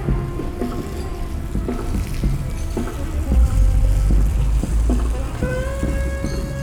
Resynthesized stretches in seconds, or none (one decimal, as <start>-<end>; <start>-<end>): 1.1-3.8; 4.3-5.5